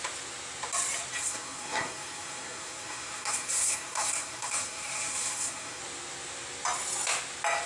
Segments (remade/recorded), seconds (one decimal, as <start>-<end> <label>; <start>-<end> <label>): 0.0-1.2 recorded; 1.2-5.8 remade; 5.8-7.7 recorded